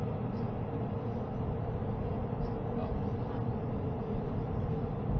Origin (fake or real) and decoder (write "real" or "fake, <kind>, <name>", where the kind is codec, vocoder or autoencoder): real